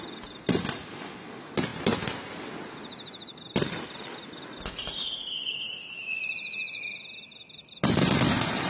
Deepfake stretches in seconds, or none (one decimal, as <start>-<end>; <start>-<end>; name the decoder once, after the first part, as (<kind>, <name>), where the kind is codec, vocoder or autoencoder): 1.7-2.6 (vocoder, BigVGAN v2); 3.3-3.9

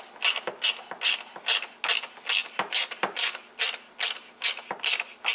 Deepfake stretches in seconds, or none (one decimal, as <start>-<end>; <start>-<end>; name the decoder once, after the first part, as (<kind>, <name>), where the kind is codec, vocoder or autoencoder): 2.4-3.6 (vocoder, BigVGAN v2)

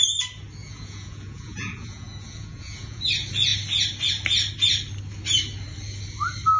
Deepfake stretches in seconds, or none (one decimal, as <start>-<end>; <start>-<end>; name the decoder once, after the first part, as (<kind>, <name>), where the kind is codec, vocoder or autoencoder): 0.6-3.0 (vocoder, Vocos)

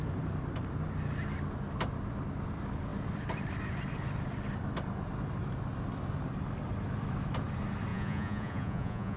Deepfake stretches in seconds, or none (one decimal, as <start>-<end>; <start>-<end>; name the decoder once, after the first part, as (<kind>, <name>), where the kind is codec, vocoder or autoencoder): 7.9-9.2 (vocoder, Vocos)